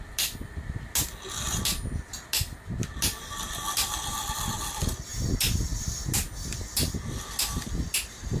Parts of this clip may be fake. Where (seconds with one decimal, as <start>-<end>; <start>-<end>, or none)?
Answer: none